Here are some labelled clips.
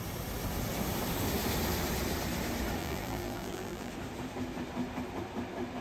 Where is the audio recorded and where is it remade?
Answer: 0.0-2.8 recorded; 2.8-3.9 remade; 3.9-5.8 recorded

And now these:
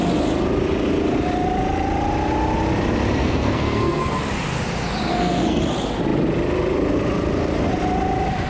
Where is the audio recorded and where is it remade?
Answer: 0.0-3.2 recorded; 3.2-4.2 remade; 4.2-5.1 recorded; 5.1-5.6 remade; 5.6-8.5 recorded

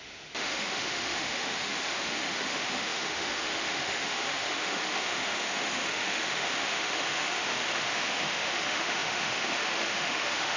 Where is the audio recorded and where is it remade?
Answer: 0.0-10.6 remade

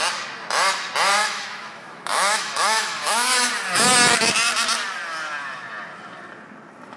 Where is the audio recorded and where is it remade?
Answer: 0.0-1.2 recorded; 1.2-3.5 remade; 3.5-7.0 recorded

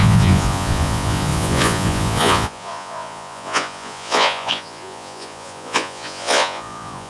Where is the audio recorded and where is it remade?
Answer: 0.0-7.1 remade

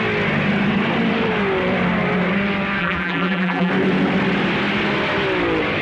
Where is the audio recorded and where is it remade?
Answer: 0.0-2.8 recorded; 2.8-3.7 remade; 3.7-5.8 recorded

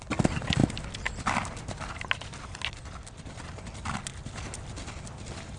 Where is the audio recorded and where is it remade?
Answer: 0.0-5.6 recorded

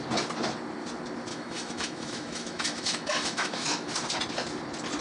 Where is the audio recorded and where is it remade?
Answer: 0.0-1.3 recorded; 1.3-3.9 remade; 3.9-5.0 recorded